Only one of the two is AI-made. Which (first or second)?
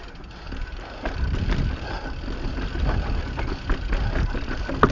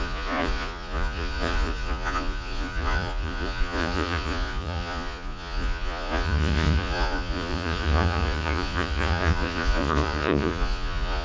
second